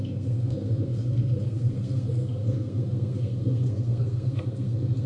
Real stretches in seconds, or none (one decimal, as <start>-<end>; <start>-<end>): none